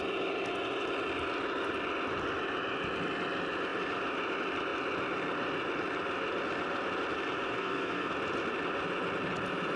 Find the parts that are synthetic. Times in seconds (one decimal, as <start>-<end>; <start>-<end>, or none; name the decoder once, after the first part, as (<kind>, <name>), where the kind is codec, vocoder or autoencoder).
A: 7.5-8.1 (codec, SNAC)